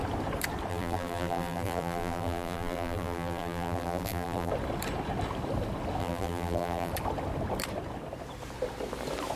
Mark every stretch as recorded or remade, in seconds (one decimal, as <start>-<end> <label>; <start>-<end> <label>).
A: 0.0-0.7 recorded; 0.7-4.5 remade; 4.5-6.0 recorded; 6.0-6.9 remade; 6.9-9.4 recorded